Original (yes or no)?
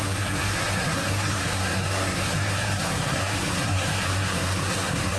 no